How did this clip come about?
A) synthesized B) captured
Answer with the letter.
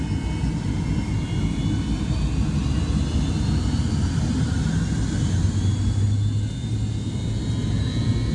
B